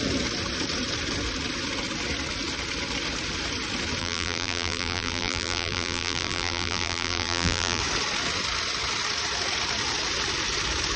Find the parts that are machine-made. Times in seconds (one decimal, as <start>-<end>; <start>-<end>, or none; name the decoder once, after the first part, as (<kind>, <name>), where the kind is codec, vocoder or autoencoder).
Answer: 4.0-7.8 (vocoder, BigVGAN v2)